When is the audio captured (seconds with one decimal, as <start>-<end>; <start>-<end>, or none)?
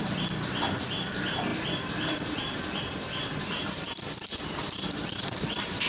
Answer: 0.0-4.3